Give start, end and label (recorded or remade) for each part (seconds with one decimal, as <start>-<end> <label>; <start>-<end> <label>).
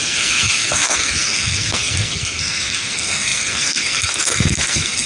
0.0-5.1 remade